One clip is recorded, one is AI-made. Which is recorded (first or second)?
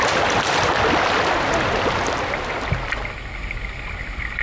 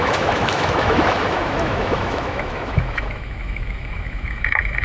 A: first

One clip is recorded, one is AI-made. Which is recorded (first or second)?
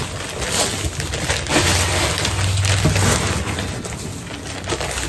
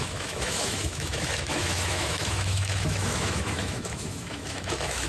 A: first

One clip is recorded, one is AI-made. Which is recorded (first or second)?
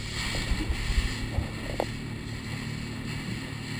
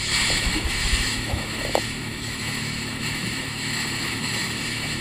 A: first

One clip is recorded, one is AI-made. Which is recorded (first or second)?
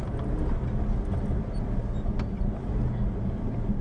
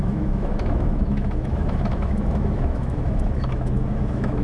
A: first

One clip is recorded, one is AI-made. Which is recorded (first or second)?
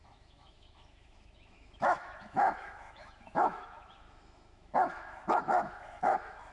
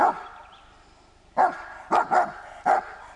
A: second